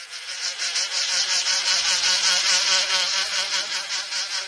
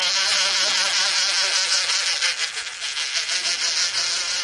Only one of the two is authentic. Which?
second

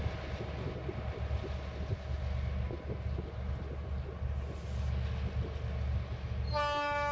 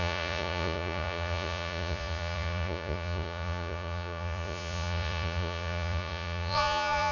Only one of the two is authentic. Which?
first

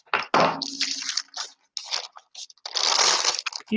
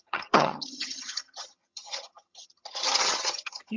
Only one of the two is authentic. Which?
first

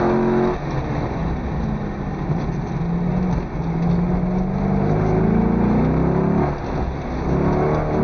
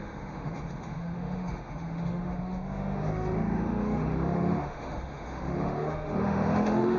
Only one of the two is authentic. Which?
first